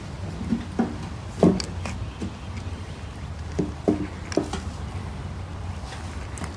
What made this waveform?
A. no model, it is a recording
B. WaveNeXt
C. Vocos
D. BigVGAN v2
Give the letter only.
A